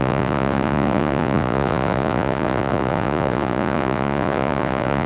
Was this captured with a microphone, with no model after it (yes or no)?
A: no